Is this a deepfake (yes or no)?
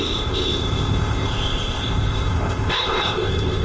yes